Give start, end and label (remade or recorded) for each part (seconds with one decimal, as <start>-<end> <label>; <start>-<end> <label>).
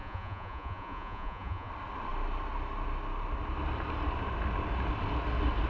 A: 0.0-1.7 remade; 1.7-5.7 recorded